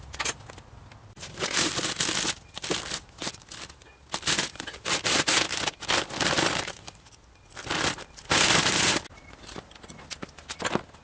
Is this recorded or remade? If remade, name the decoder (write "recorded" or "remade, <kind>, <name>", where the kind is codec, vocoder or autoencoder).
recorded